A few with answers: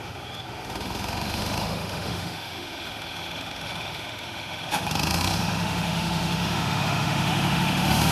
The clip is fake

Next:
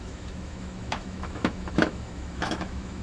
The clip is fake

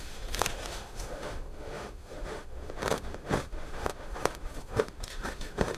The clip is fake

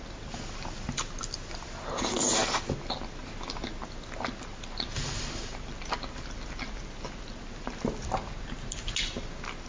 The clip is real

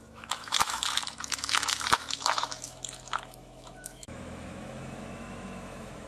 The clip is fake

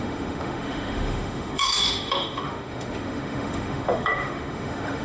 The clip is fake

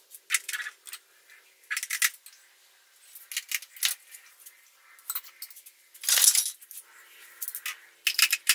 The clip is real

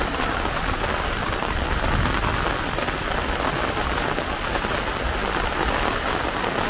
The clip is real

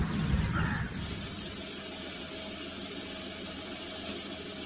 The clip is real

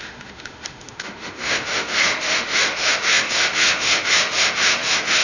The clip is fake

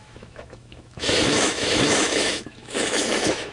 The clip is fake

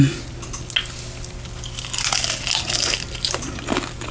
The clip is real